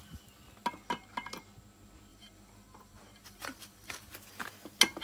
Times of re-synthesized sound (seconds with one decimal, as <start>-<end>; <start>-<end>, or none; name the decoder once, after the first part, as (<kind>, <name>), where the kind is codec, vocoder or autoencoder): 2.1-4.1 (vocoder, BigVGAN v2)